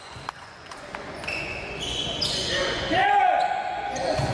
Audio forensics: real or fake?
fake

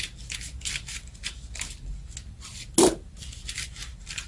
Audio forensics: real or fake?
real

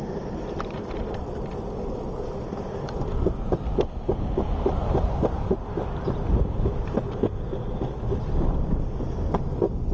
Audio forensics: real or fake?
real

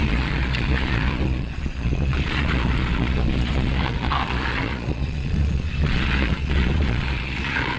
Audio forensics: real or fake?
fake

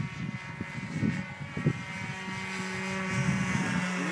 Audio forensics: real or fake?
real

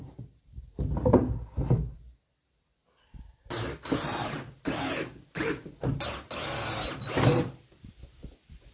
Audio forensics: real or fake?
real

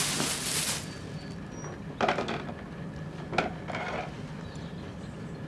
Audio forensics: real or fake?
real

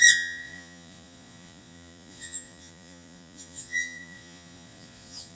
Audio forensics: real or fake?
fake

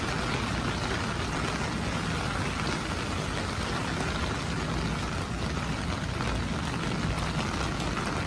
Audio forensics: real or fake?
real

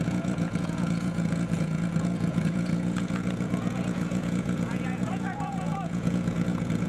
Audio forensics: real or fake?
fake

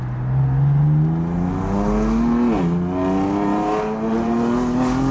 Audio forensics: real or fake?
real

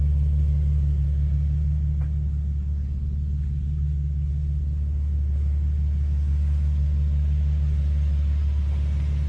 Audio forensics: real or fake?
real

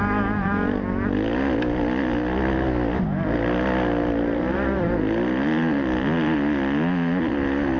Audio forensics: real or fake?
real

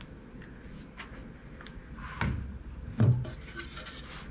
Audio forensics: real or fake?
real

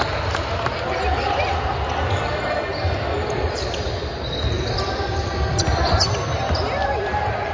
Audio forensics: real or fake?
real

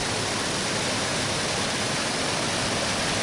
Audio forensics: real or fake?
real